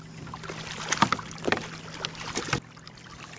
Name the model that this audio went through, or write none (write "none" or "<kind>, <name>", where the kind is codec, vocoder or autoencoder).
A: none